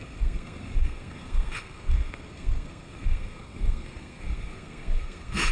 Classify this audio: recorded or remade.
remade